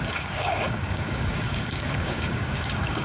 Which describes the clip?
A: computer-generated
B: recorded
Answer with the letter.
A